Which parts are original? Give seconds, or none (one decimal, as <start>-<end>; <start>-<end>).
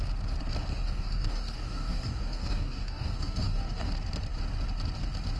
0.0-0.7; 3.9-5.4